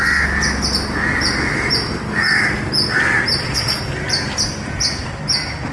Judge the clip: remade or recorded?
recorded